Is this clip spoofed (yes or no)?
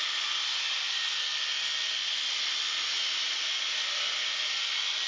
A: no